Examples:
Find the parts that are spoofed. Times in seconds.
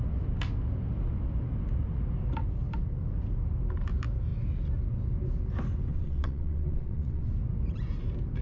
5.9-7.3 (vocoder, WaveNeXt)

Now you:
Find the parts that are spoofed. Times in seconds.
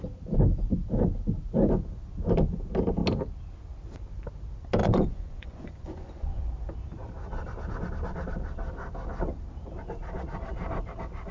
4.8-6.5 (vocoder, Vocos)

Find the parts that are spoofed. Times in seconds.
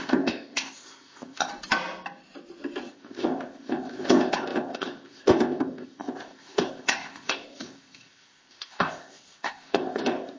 0.0-1.5 (codec, ZipCodec); 2.9-10.4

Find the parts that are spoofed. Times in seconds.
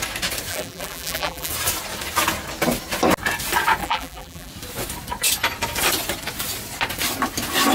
0.5-1.5 (vocoder, BigVGAN v2); 3.8-4.5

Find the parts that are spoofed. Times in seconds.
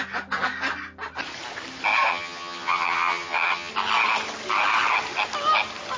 2.1-3.7 (vocoder, HiFi-GAN)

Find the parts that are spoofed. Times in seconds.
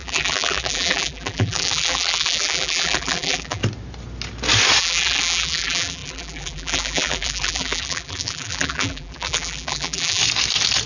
0.0-3.6 (vocoder, BigVGAN v2); 4.8-10.2